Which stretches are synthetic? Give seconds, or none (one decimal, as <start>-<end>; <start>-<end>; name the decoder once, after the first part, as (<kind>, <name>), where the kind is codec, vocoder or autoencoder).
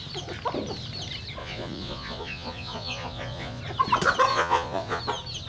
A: 1.4-3.6 (vocoder, Vocos); 4.3-5.0